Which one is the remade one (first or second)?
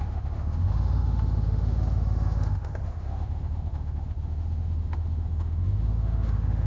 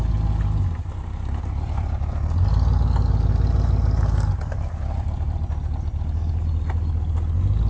first